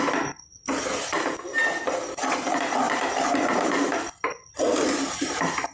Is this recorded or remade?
recorded